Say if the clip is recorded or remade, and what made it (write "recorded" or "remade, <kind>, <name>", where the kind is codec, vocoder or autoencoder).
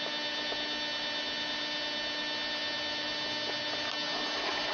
recorded